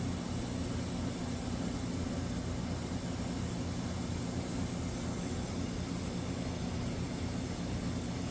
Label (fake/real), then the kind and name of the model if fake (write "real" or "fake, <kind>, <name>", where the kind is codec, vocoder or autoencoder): real